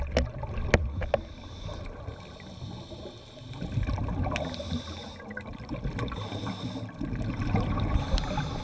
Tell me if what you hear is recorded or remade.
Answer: recorded